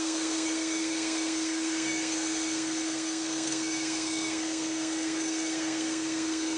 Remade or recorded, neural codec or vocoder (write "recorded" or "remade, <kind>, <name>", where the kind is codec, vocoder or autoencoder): remade, codec, SNAC